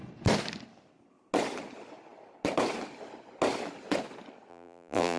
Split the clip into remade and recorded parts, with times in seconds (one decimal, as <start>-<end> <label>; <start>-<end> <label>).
0.0-4.5 recorded; 4.5-5.2 remade